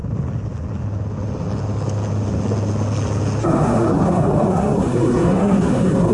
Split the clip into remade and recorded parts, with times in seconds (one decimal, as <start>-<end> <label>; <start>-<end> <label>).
0.0-3.4 recorded; 3.4-6.1 remade